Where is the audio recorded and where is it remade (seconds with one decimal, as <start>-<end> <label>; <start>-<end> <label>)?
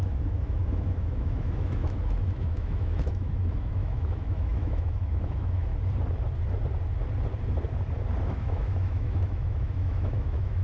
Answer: 0.0-5.7 remade; 5.7-8.3 recorded; 8.3-10.6 remade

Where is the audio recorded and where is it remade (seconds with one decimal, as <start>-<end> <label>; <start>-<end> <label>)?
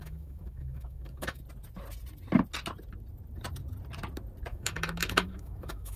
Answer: 0.0-1.4 remade; 1.4-4.5 recorded; 4.5-6.0 remade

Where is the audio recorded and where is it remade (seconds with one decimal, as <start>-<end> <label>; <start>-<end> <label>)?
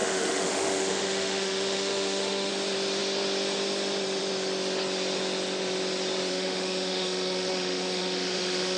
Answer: 0.0-2.5 remade; 2.5-6.3 recorded; 6.3-8.8 remade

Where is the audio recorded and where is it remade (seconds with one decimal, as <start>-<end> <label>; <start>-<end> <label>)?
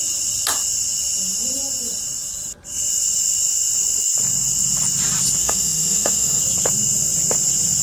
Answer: 0.0-5.4 recorded; 5.4-6.4 remade; 6.4-7.8 recorded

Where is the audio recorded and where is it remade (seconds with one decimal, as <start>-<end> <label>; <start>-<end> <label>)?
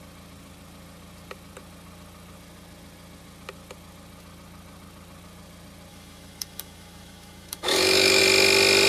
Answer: 0.0-5.9 recorded; 5.9-8.2 remade; 8.2-8.9 recorded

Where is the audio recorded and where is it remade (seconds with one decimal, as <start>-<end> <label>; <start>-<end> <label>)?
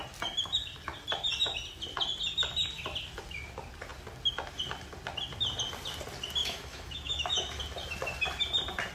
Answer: 0.0-6.4 recorded; 6.4-7.6 remade; 7.6-8.9 recorded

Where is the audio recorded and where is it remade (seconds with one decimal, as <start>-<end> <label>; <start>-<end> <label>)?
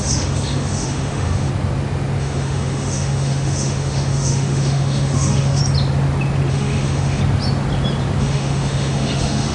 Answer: 0.0-1.5 remade; 1.5-2.2 recorded; 2.2-5.6 remade; 5.6-6.5 recorded; 6.5-7.2 remade; 7.2-8.2 recorded; 8.2-9.5 remade